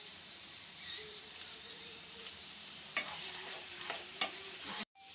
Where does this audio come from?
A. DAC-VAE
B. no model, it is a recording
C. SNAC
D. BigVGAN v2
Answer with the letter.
D